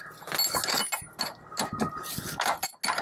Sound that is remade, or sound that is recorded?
recorded